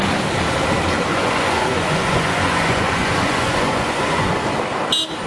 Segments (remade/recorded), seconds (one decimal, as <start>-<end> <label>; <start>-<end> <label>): 0.0-1.1 recorded; 1.1-4.3 remade; 4.3-5.3 recorded

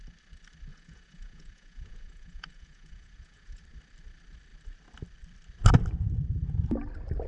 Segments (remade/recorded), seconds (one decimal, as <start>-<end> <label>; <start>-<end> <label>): 0.0-0.7 recorded; 0.7-3.6 remade; 3.6-7.3 recorded

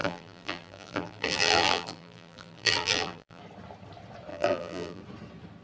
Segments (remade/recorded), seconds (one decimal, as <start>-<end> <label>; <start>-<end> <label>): 0.0-3.4 remade; 3.4-4.3 recorded; 4.3-5.0 remade; 5.0-5.6 recorded

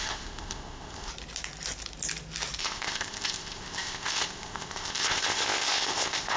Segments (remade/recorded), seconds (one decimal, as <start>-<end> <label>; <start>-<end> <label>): 0.0-1.1 remade; 1.1-2.6 recorded; 2.6-6.4 remade

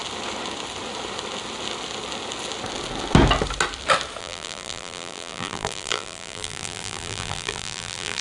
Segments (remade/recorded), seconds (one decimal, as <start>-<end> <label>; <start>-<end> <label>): 0.0-4.2 recorded; 4.2-8.2 remade